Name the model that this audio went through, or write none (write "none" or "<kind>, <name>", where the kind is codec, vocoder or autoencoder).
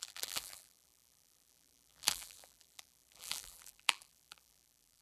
vocoder, BigVGAN v2